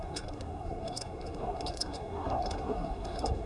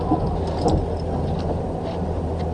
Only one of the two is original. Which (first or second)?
second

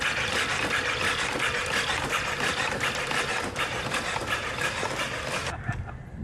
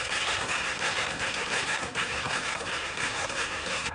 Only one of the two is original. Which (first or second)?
first